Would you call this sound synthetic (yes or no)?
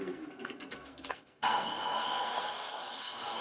yes